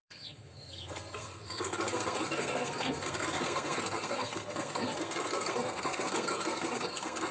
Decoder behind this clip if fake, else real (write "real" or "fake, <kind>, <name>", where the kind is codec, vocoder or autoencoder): fake, codec, SNAC